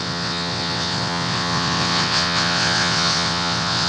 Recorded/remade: remade